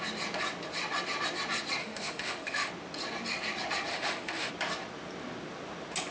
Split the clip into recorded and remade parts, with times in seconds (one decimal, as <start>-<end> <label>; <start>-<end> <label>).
0.0-1.8 recorded; 1.8-2.7 remade; 2.7-3.9 recorded; 3.9-4.5 remade; 4.5-6.1 recorded